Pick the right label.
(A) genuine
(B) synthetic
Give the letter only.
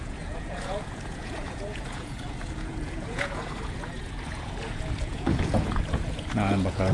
B